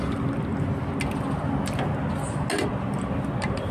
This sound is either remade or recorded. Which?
recorded